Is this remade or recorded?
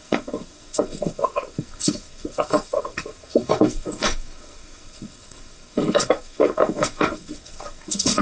remade